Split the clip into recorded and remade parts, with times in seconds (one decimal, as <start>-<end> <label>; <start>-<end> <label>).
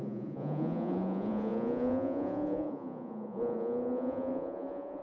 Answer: 0.0-5.0 remade